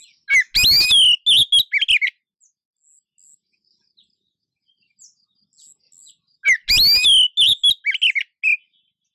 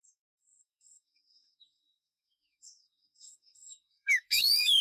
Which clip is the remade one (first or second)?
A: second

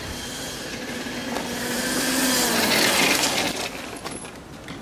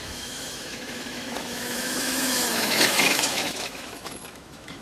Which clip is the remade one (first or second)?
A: second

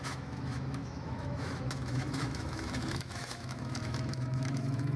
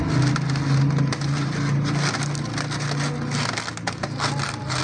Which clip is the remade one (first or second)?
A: first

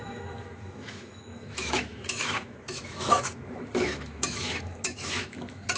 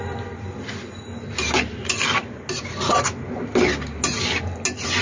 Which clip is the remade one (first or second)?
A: first